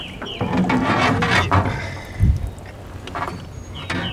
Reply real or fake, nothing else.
real